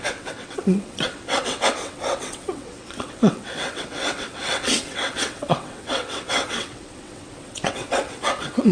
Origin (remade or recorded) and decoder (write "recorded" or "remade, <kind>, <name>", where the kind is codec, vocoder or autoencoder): remade, vocoder, WaveNeXt